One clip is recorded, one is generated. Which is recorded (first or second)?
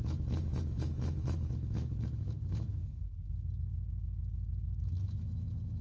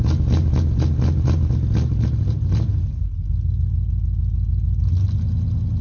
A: second